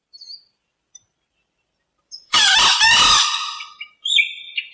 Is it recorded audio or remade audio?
remade